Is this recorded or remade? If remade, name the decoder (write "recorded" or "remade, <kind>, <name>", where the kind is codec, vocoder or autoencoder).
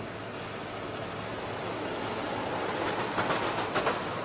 recorded